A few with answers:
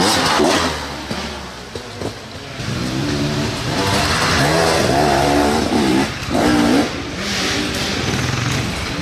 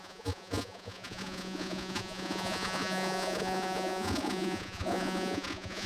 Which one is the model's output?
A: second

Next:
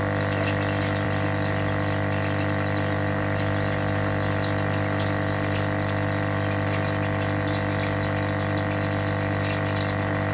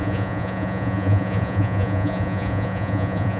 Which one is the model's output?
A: second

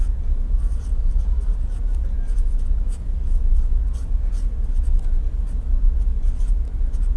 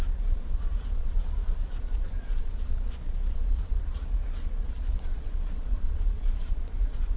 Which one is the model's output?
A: second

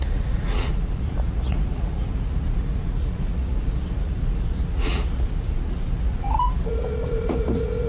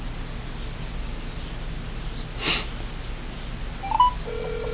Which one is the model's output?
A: first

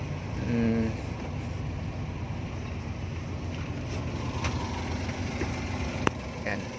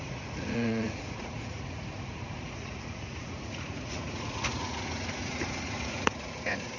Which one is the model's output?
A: second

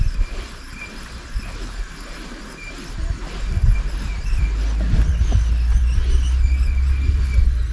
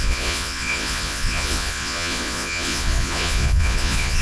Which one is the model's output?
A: second